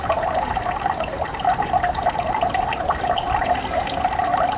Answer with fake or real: real